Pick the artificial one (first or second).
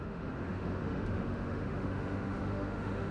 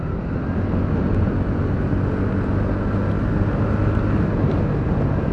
first